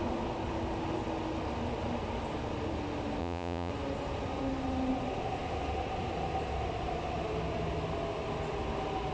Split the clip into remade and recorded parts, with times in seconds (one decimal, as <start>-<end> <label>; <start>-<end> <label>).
0.0-3.2 recorded; 3.2-3.7 remade; 3.7-9.1 recorded